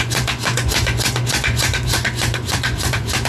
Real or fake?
fake